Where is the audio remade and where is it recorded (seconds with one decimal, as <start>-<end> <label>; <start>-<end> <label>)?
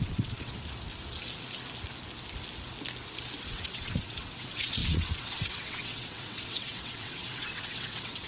0.0-0.5 remade; 0.5-3.4 recorded; 3.4-8.3 remade